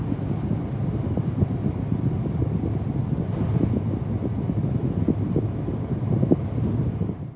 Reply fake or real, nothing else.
real